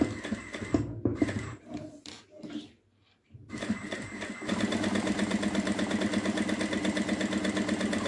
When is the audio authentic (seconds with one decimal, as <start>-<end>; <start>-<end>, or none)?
0.0-1.1; 6.0-8.1